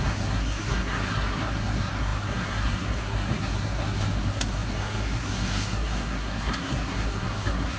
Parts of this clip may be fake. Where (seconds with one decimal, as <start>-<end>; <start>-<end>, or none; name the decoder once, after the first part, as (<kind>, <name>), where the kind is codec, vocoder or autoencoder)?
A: 0.0-7.8 (codec, SNAC)